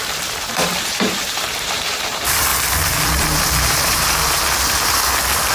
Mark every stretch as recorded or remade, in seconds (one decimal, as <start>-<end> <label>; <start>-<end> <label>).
0.0-2.5 remade; 2.5-3.7 recorded; 3.7-4.2 remade; 4.2-5.5 recorded